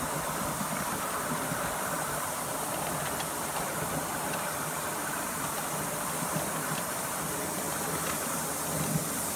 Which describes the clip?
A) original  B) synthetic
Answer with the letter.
A